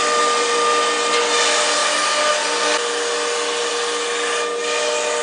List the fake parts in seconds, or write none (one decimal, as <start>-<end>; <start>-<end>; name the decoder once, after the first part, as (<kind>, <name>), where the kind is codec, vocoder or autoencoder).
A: none